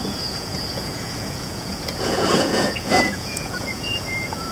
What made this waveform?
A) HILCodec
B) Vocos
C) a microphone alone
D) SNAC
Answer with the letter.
B